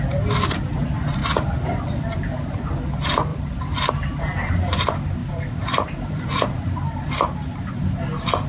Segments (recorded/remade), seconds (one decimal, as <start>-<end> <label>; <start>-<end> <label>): 0.0-1.2 recorded; 1.2-2.6 remade; 2.6-3.3 recorded; 3.3-3.9 remade; 3.9-5.2 recorded; 5.2-6.2 remade; 6.2-8.5 recorded